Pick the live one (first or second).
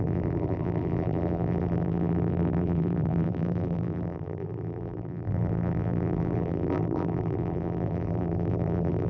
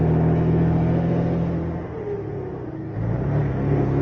second